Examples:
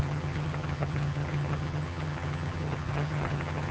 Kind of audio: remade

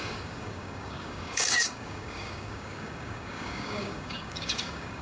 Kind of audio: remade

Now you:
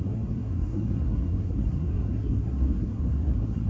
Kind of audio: remade